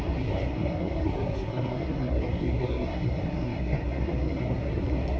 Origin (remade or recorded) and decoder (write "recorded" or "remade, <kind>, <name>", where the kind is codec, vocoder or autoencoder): remade, codec, SNAC